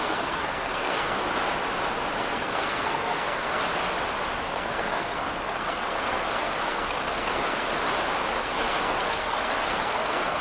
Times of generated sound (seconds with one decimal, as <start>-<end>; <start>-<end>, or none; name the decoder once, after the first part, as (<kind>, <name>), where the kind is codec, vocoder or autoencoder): 0.0-1.2 (codec, SNAC); 2.2-3.6; 4.4-7.7; 8.4-10.4

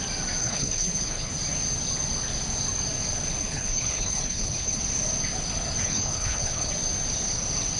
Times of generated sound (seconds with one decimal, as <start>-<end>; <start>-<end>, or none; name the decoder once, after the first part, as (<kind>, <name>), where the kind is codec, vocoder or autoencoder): 0.4-1.3 (codec, HILCodec); 3.4-4.8; 5.8-6.7

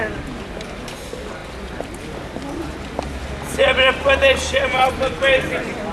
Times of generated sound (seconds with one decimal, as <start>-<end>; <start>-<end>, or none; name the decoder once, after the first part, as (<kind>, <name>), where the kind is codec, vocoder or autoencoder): none

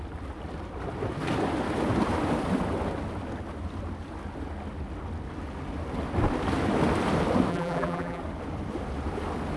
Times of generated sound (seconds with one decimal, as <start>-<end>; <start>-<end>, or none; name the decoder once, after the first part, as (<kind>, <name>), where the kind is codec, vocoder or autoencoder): 7.5-8.2 (vocoder, BigVGAN v2)

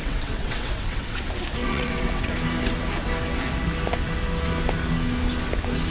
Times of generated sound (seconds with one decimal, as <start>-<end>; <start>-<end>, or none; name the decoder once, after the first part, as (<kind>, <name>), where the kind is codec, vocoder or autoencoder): 0.0-1.2 (vocoder, WaveNeXt); 1.6-2.3

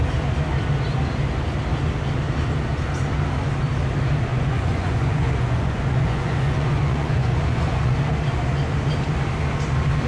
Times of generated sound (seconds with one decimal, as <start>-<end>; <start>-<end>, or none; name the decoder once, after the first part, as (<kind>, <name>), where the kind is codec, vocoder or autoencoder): 4.3-8.1 (vocoder, Vocos)

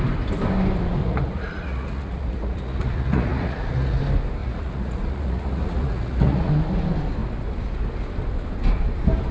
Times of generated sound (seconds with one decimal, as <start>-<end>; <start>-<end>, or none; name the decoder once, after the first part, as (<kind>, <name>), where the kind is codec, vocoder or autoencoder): 1.0-4.0 (vocoder, Vocos); 4.4-6.5